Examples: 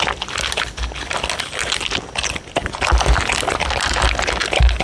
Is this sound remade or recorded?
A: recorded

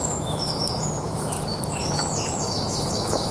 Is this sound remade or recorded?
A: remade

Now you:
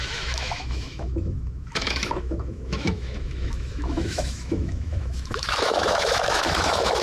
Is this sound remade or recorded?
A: remade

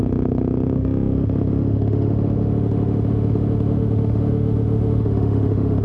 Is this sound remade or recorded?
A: remade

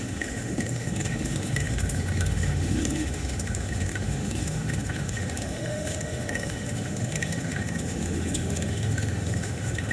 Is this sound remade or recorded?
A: remade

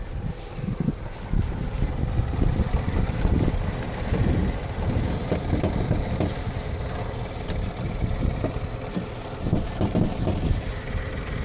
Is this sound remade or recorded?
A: recorded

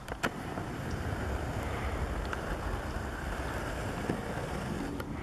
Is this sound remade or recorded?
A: recorded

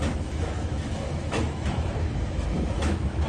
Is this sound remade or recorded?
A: remade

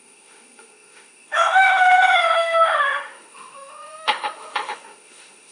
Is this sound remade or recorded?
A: remade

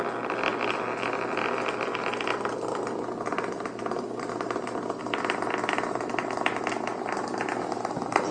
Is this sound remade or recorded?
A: recorded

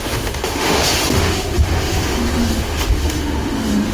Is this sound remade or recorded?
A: remade